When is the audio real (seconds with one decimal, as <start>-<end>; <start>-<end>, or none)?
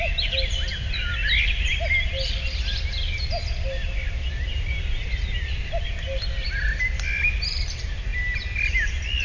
0.0-9.2